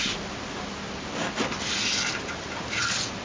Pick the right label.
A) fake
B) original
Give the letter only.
B